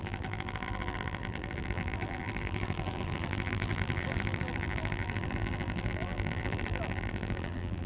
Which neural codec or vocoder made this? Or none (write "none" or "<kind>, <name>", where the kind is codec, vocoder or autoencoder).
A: vocoder, BigVGAN v2